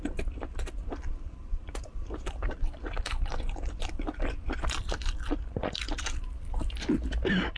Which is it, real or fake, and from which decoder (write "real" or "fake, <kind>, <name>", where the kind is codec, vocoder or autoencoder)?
fake, vocoder, BigVGAN v2